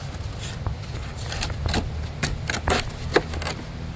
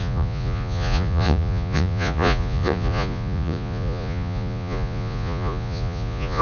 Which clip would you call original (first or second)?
first